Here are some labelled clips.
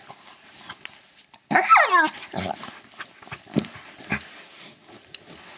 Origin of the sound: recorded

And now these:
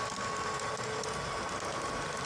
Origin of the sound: recorded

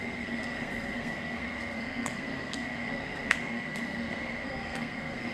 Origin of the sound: remade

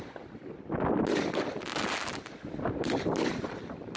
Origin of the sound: recorded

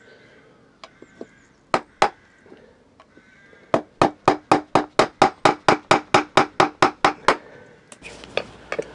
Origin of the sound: recorded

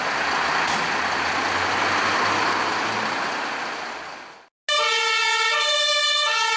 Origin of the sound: recorded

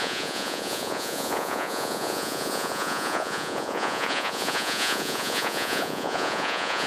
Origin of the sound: remade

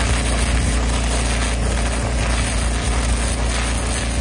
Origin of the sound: recorded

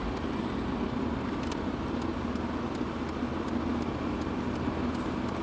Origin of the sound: recorded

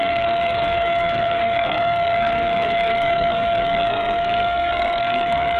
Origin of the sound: remade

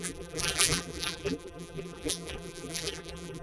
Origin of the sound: remade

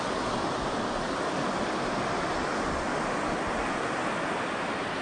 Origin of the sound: recorded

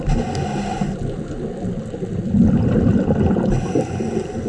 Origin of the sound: recorded